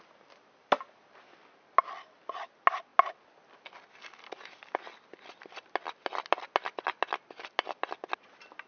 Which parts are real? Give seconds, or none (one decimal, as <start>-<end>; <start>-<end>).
0.0-8.7